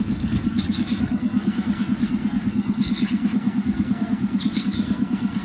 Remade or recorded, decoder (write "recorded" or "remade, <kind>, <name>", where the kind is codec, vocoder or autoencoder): remade, codec, SNAC